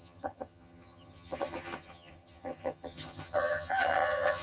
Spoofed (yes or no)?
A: yes